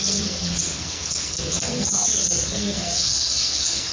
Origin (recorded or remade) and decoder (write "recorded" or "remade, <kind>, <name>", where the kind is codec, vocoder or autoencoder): remade, codec, SNAC